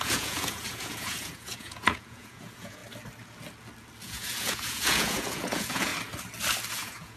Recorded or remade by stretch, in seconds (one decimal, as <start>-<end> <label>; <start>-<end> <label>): 0.0-2.8 remade; 2.8-4.0 recorded; 4.0-5.9 remade; 5.9-6.7 recorded; 6.7-7.2 remade